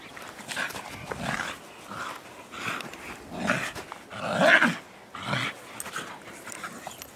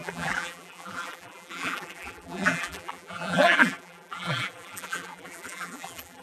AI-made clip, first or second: second